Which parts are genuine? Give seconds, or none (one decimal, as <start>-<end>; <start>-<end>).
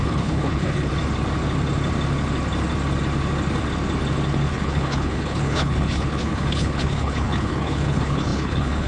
0.9-4.5